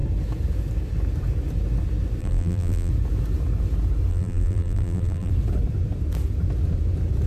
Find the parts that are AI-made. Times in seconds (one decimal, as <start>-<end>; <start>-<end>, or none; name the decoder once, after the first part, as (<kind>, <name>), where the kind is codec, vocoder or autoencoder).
2.2-2.9 (vocoder, BigVGAN v2); 4.1-5.3